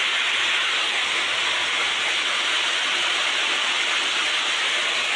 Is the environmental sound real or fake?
real